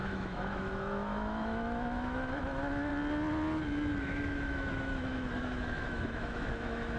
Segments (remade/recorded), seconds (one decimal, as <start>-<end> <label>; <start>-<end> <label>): 0.0-2.9 remade; 2.9-4.0 recorded; 4.0-7.0 remade